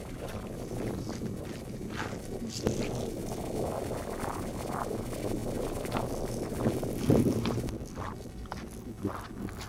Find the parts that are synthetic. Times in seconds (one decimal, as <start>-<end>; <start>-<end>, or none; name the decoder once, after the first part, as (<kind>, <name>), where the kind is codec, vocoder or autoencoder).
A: none

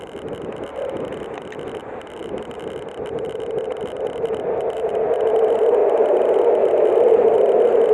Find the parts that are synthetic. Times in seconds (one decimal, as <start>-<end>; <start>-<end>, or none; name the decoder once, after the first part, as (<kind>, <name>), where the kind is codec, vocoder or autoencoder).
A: none

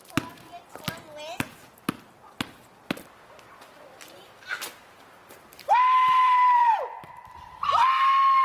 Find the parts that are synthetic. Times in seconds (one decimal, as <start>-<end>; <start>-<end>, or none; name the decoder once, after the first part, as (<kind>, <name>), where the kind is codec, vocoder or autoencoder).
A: 4.5-6.7 (vocoder, BigVGAN v2)

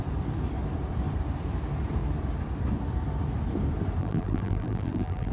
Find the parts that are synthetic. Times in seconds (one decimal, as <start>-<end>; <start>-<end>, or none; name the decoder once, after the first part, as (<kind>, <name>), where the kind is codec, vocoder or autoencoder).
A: 4.0-5.3 (vocoder, BigVGAN v2)